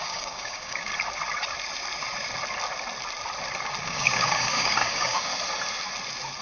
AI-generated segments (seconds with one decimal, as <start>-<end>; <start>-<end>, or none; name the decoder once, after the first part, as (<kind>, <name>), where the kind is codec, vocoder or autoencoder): 0.0-0.9 (codec, DAC); 3.8-5.3